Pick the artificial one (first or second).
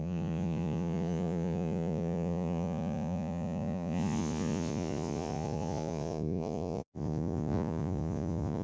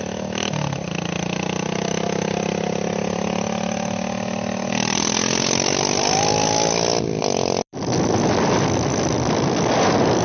first